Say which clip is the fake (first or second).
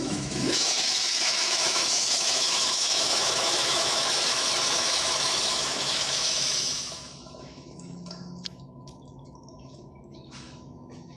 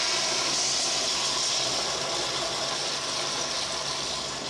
first